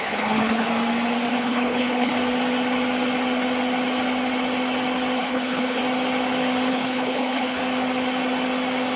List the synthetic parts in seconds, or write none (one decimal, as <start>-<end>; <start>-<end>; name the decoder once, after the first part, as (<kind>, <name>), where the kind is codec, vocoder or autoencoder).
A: 0.0-0.7 (codec, HILCodec); 1.3-2.1; 5.2-5.8; 6.7-7.6